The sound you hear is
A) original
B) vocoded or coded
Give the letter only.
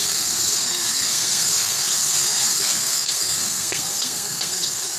B